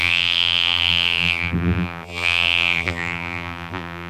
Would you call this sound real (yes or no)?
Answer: no